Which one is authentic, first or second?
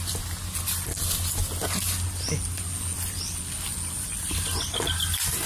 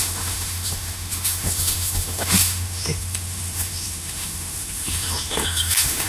first